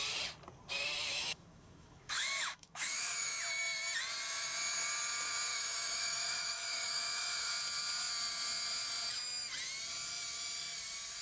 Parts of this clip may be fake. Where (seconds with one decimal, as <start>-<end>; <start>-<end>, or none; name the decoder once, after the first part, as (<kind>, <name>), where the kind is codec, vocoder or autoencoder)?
1.1-3.3 (autoencoder, DAC-VAE); 5.5-7.5

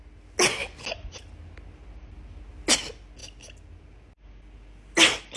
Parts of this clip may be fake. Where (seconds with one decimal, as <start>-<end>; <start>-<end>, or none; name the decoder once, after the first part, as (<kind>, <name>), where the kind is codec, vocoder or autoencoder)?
none

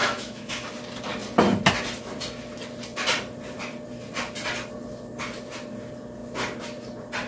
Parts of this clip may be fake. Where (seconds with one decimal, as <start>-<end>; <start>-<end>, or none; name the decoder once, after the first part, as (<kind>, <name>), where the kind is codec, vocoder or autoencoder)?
0.0-0.7 (autoencoder, DAC-VAE)

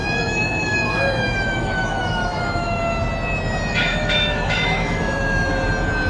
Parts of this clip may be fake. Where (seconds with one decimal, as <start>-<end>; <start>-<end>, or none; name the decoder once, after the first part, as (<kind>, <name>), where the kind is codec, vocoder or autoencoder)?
0.0-2.8 (autoencoder, DAC-VAE); 3.7-5.5